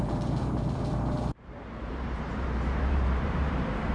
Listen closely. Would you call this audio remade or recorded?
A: remade